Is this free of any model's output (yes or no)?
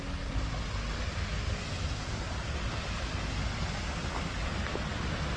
yes